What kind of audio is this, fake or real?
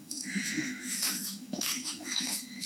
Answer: fake